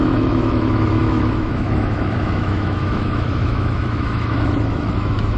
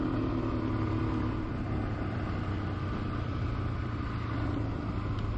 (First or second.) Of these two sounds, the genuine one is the second